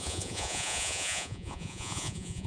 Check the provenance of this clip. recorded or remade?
remade